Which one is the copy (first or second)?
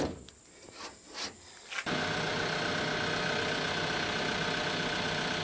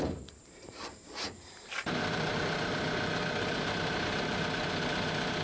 second